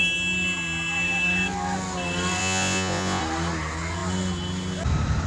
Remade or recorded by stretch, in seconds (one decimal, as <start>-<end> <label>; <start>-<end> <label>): 0.0-2.4 recorded; 2.4-3.2 remade; 3.2-5.3 recorded